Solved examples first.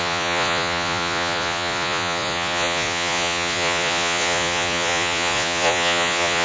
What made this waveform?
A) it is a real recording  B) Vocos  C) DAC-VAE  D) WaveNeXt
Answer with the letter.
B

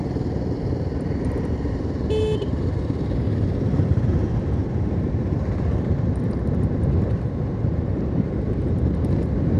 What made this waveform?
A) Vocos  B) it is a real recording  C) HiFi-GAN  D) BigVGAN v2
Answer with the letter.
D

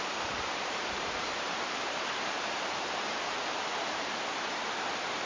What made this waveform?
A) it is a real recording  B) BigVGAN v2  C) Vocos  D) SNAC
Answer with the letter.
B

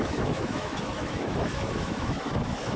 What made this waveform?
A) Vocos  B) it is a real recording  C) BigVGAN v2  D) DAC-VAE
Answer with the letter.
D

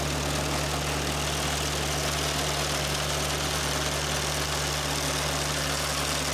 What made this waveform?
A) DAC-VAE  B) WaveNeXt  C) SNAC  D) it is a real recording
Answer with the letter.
D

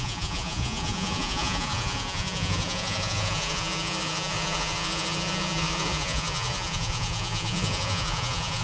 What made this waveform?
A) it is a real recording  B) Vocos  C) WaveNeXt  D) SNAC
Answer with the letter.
B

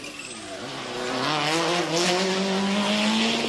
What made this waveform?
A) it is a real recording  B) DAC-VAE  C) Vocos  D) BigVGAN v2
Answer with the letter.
A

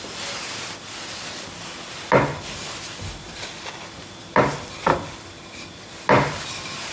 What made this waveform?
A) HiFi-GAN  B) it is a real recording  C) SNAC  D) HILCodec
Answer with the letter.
B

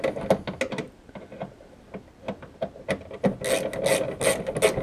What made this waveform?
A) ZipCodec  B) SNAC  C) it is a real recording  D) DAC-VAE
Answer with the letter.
C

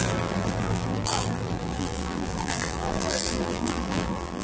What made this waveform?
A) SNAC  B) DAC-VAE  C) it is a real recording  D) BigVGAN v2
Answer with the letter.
D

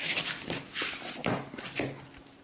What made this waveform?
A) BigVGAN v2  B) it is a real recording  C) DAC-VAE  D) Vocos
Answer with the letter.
B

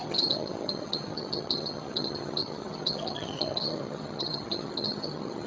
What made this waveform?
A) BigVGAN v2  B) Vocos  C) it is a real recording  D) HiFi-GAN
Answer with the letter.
D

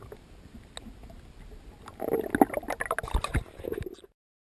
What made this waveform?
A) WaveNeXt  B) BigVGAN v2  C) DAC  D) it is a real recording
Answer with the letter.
D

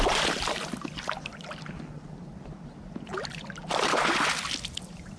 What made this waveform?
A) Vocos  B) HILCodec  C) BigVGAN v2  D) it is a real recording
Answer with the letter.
D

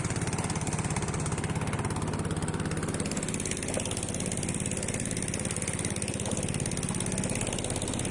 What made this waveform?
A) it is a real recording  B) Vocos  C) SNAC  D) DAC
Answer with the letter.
A